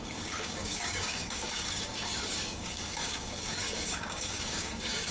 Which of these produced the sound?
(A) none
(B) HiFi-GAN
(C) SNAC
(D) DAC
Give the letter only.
D